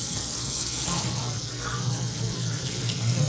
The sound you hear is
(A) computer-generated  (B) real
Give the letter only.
A